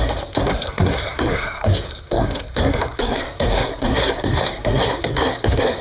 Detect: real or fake fake